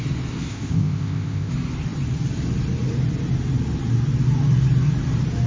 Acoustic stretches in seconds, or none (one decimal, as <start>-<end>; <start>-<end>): 0.0-0.5; 1.5-5.5